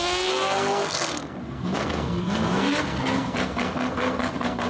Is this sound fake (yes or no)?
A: yes